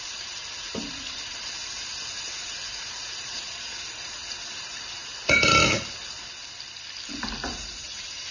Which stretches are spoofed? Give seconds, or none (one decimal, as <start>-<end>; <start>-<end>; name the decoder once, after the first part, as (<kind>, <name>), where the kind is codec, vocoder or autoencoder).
0.0-5.0 (vocoder, BigVGAN v2); 7.5-8.3